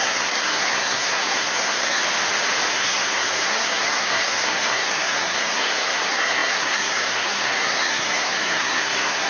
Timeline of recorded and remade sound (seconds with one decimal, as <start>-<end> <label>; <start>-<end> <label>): 0.0-2.0 remade; 2.0-2.7 recorded; 2.7-9.3 remade